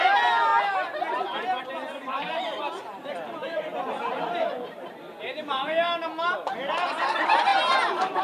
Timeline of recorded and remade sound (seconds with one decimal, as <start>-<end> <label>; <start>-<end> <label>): 0.0-8.2 recorded